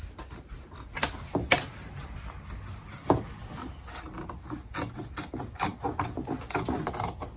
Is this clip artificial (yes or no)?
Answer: no